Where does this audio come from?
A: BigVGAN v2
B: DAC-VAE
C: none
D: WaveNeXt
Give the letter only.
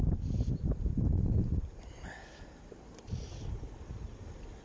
C